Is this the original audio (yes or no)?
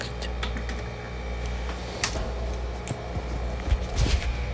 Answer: yes